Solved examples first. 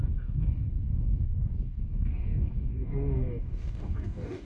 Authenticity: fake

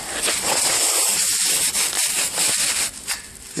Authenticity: real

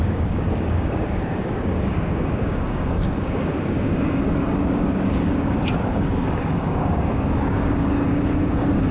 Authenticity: fake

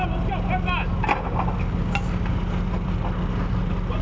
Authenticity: real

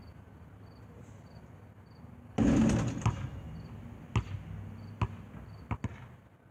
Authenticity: real